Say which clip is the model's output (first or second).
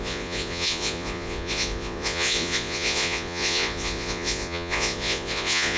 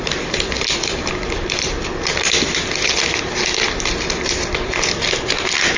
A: first